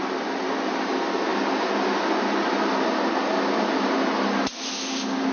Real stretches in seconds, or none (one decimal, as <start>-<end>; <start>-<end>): 0.0-5.3